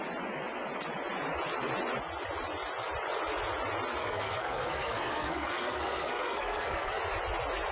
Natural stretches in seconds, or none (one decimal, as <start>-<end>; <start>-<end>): 0.0-4.0; 7.0-7.7